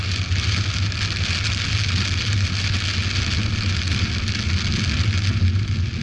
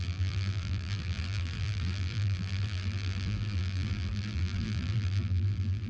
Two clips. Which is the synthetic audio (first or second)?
second